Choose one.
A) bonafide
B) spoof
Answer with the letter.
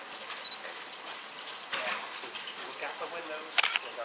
A